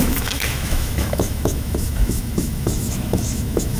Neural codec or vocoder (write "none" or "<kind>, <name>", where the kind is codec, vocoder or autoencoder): autoencoder, DAC-VAE